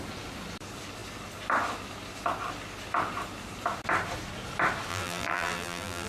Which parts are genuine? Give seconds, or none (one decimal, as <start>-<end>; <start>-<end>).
0.0-4.9